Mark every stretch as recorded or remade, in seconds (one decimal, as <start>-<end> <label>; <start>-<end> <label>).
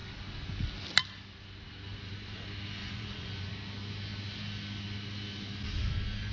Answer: 0.0-2.8 recorded; 2.8-3.5 remade; 3.5-6.3 recorded